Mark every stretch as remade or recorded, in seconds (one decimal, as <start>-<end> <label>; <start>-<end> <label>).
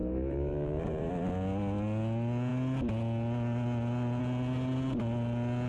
0.0-1.1 remade; 1.1-5.7 recorded